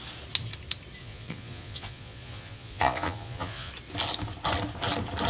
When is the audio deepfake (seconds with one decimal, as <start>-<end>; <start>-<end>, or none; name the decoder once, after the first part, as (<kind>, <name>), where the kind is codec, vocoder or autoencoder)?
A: 1.0-3.7 (vocoder, Vocos)